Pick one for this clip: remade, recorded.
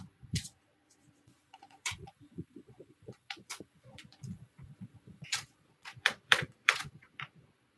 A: remade